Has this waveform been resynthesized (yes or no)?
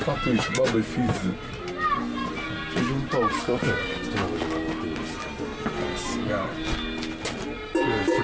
no